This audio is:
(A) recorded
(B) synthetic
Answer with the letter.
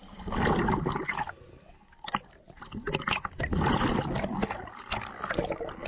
A